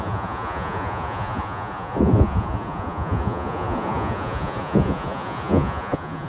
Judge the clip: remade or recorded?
remade